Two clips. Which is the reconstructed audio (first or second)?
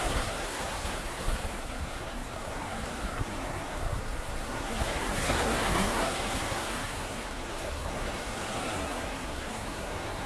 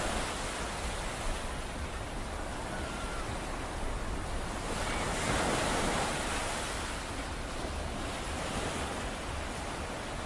first